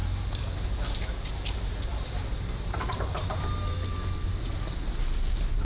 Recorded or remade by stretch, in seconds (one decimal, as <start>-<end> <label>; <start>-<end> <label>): 0.0-3.4 remade; 3.4-5.6 recorded